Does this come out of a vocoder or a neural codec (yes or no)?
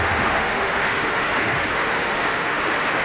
yes